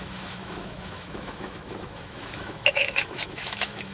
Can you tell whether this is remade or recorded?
remade